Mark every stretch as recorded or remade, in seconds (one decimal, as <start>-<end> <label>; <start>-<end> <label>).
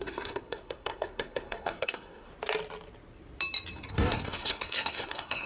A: 0.0-2.3 remade; 2.3-3.9 recorded; 3.9-5.5 remade